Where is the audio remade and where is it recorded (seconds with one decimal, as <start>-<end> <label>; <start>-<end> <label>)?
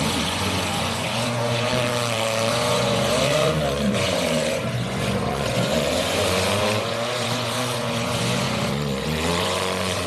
0.0-1.7 remade; 1.7-2.5 recorded; 2.5-10.1 remade